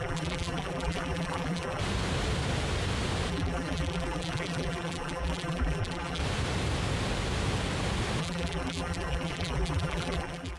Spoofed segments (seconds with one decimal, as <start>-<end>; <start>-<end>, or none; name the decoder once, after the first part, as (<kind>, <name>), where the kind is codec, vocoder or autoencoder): 0.0-1.8 (vocoder, BigVGAN v2); 3.3-6.2; 8.2-10.6